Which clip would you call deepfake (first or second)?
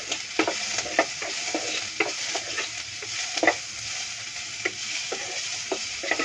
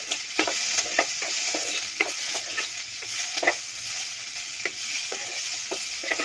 second